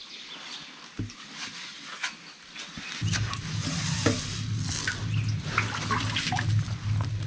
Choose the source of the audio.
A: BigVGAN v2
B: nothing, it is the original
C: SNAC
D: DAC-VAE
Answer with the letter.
B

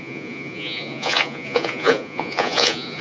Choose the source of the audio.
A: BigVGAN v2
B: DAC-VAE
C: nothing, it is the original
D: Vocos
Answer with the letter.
D